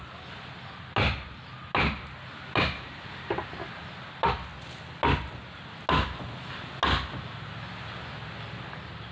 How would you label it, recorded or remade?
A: recorded